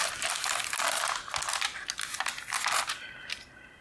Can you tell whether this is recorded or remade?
recorded